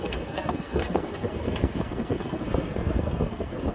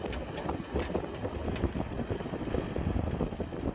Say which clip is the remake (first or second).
first